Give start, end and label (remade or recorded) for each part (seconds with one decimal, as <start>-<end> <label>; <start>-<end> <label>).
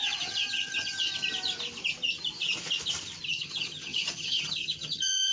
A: 0.0-1.1 remade; 1.1-3.3 recorded; 3.3-5.3 remade